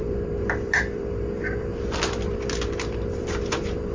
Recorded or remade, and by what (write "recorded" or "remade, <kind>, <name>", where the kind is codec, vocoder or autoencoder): remade, vocoder, BigVGAN v2